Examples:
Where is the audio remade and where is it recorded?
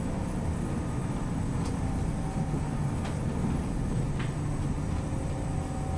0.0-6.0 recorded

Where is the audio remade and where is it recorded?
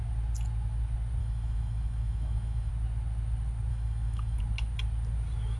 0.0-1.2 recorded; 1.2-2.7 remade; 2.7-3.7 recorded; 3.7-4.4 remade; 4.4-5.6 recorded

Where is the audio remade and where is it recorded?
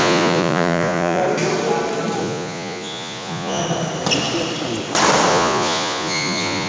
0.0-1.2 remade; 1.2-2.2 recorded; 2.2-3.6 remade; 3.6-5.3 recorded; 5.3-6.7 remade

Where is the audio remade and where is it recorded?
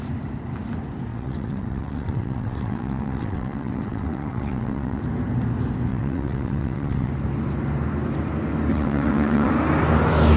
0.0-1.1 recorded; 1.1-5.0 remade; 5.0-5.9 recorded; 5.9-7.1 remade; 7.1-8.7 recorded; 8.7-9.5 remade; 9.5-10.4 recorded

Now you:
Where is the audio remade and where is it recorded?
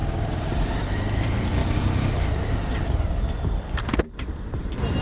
0.0-5.0 recorded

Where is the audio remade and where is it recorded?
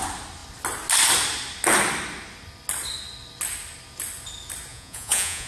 0.0-4.7 recorded; 4.7-5.5 remade